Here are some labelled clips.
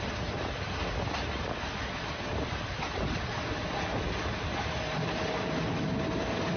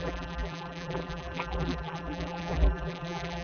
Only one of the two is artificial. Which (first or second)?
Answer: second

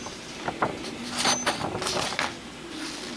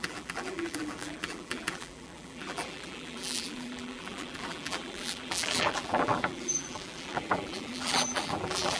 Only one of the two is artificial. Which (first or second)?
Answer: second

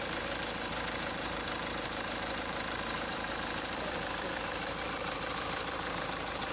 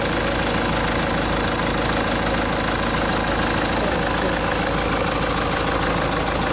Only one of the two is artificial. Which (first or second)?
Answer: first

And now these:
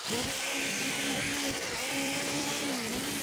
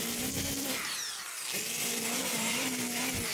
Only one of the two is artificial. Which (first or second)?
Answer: first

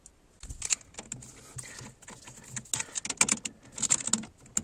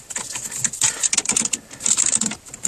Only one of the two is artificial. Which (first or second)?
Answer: second